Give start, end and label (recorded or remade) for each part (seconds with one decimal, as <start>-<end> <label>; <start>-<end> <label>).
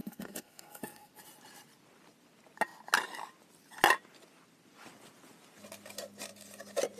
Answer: 0.0-1.1 remade; 1.1-7.0 recorded